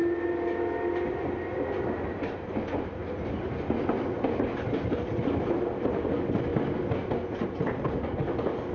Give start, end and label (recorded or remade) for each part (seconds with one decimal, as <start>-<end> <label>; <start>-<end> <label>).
0.0-8.7 recorded